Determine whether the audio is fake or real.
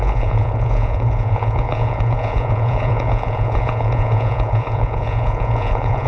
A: fake